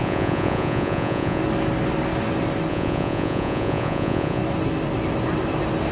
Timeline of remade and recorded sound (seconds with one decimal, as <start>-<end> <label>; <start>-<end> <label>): 0.0-1.4 remade; 1.4-2.7 recorded; 2.7-4.4 remade; 4.4-5.9 recorded